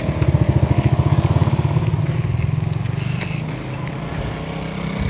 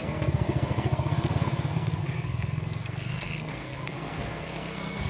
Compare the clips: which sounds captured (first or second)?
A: first